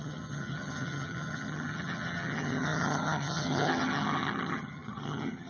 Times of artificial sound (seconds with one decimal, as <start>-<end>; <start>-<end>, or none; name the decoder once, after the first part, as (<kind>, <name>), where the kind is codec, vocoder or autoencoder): 0.0-5.5 (vocoder, HiFi-GAN)